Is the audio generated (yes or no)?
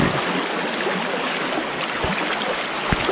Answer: no